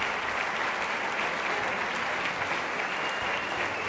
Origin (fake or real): real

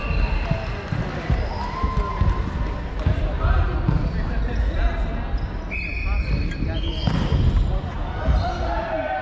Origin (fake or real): real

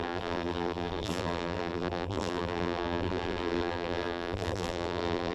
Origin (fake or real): fake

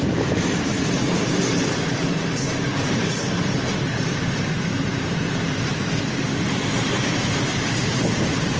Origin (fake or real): fake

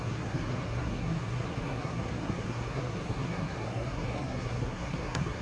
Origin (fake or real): fake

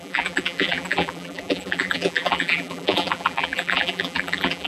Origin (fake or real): fake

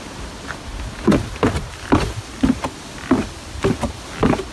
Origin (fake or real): real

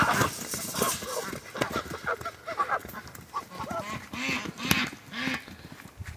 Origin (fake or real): real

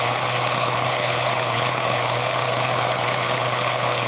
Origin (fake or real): fake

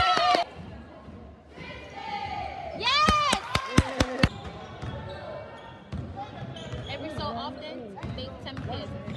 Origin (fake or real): real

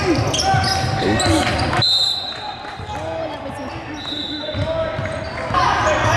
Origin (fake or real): real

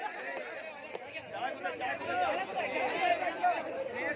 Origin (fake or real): real